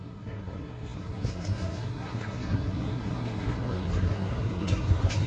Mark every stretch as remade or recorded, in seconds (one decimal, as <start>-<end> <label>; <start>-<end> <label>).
0.0-5.3 remade